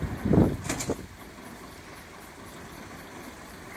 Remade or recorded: recorded